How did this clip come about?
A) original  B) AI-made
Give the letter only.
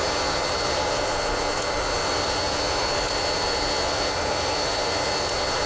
A